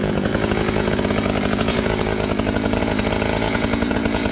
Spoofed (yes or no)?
yes